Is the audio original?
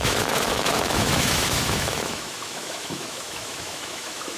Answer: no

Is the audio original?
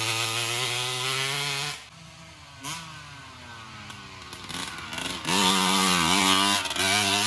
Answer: yes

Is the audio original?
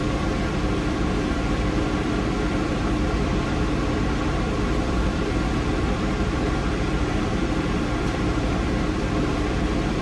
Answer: no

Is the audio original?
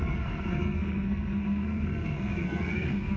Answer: no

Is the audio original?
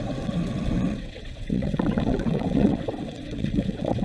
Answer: no